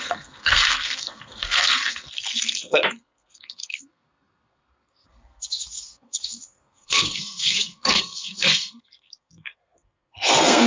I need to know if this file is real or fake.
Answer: fake